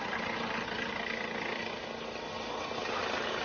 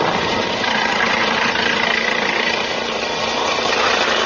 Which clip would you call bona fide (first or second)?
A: first